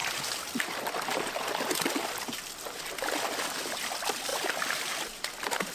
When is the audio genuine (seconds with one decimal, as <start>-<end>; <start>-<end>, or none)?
0.0-5.7